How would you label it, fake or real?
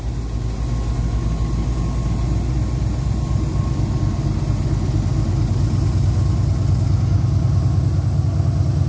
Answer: real